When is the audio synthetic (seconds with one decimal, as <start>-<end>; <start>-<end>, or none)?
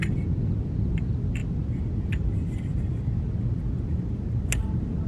none